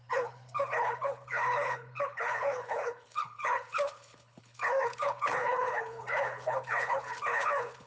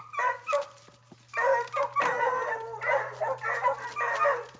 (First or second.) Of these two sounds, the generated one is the first